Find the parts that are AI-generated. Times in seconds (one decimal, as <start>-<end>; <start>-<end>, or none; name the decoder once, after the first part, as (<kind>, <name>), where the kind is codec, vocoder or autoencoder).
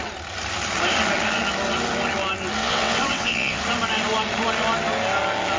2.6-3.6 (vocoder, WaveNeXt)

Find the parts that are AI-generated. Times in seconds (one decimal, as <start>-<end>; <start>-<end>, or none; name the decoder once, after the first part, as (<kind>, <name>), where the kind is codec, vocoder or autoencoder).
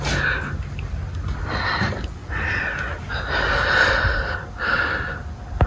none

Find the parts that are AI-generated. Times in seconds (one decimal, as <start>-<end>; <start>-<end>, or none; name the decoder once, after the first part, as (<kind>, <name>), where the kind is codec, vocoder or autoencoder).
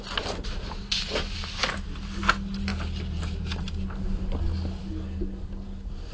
none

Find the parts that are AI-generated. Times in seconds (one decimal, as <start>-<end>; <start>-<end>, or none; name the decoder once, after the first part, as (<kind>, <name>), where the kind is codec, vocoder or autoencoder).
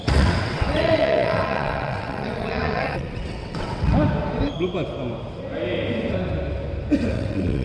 0.0-3.9 (vocoder, WaveNeXt); 7.1-7.6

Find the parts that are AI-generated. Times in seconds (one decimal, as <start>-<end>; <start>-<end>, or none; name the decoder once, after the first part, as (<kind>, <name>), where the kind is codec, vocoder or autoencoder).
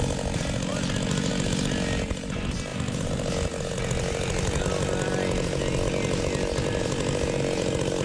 none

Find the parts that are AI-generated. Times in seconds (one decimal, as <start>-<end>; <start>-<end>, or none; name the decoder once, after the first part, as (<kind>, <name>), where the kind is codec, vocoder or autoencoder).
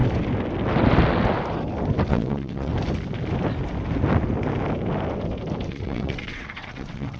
2.1-2.7 (vocoder, WaveNeXt); 5.7-7.2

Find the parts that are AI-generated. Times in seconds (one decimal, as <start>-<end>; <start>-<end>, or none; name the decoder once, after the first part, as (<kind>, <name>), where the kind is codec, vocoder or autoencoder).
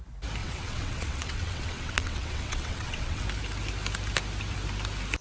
0.4-3.2 (vocoder, WaveNeXt)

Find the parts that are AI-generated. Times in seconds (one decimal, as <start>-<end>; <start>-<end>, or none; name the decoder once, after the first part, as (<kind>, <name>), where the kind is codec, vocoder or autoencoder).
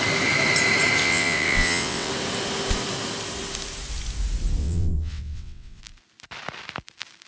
1.0-2.1 (vocoder, WaveNeXt); 4.6-5.8